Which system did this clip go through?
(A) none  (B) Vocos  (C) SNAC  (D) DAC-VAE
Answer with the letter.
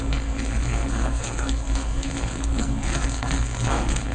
C